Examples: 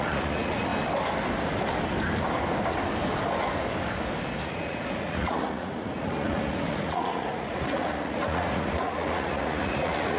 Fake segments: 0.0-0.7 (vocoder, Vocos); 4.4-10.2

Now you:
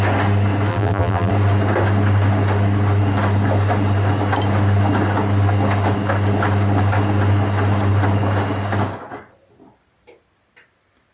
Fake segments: 0.7-1.3 (vocoder, BigVGAN v2)

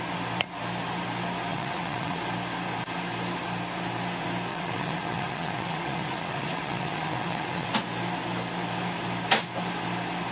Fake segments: 1.5-2.2 (vocoder, WaveNeXt); 4.5-7.7

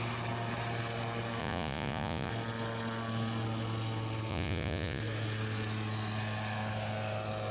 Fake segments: 1.4-2.3 (vocoder, Vocos); 4.3-5.0

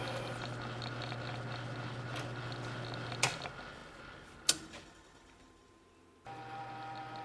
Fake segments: none

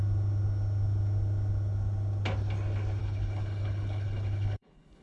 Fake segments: 3.0-5.0 (codec, HILCodec)

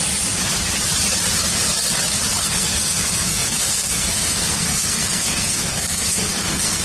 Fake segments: 2.4-6.8 (codec, SNAC)

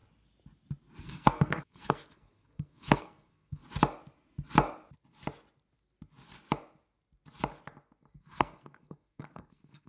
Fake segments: 1.0-3.6 (codec, SNAC); 8.2-9.9